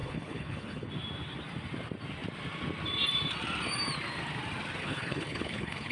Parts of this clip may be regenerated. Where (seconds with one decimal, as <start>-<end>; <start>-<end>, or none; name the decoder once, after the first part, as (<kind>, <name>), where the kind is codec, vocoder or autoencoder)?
0.0-0.9 (codec, HILCodec); 4.8-5.9